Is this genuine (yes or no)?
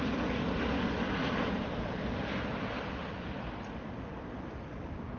yes